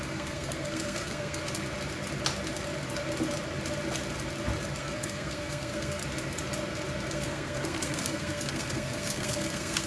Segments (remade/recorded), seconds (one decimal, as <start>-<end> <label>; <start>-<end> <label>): 0.0-1.4 remade; 1.4-4.8 recorded; 4.8-6.0 remade; 6.0-7.1 recorded; 7.1-9.9 remade